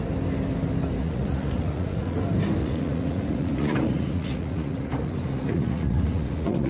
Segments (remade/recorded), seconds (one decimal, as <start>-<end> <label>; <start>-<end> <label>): 0.0-1.0 recorded; 1.0-2.2 remade; 2.2-2.6 recorded; 2.6-6.7 remade